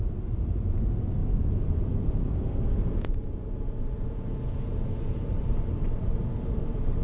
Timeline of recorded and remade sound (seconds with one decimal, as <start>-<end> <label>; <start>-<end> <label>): 0.0-1.2 recorded; 1.2-5.3 remade; 5.3-7.0 recorded